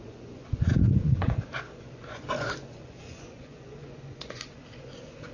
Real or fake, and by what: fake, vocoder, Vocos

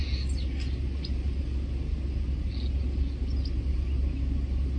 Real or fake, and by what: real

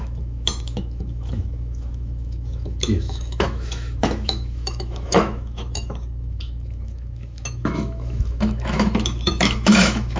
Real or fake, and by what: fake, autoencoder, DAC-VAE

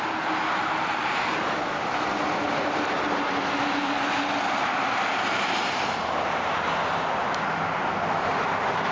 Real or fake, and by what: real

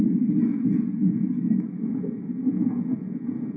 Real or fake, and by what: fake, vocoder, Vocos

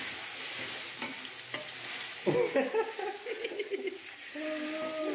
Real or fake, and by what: real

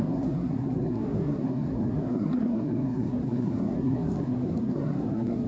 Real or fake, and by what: fake, codec, SNAC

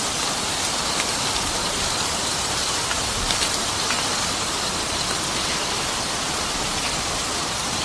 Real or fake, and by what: real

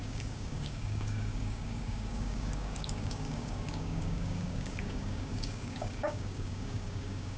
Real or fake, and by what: fake, codec, DAC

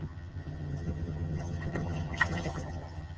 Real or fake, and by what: fake, vocoder, HiFi-GAN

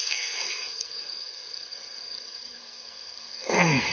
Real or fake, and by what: fake, codec, SNAC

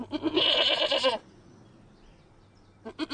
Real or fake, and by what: real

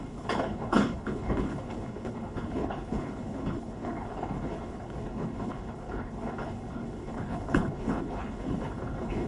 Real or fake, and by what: fake, codec, HILCodec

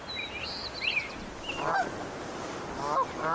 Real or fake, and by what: real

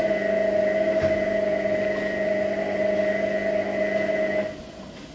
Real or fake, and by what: real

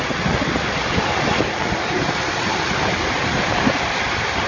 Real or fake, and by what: real